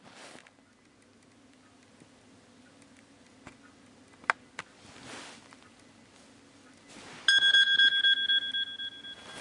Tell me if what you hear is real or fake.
real